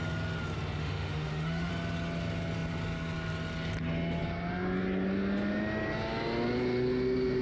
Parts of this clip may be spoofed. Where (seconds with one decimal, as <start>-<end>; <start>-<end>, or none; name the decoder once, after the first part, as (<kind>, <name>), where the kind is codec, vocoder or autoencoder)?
0.8-1.7 (autoencoder, DAC-VAE)